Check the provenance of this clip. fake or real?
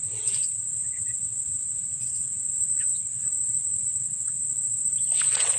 fake